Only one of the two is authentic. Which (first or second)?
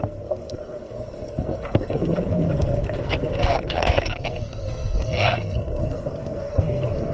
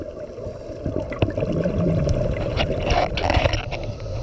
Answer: second